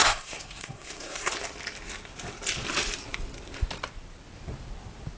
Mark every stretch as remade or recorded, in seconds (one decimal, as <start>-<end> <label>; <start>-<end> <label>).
0.0-1.3 remade; 1.3-5.2 recorded